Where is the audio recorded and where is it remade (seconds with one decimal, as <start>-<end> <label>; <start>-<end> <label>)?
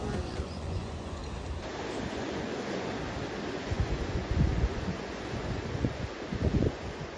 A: 0.0-1.2 remade; 1.2-2.1 recorded; 2.1-2.9 remade; 2.9-3.5 recorded; 3.5-7.2 remade